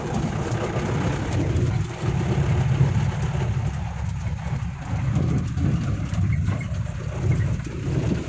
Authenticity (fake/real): fake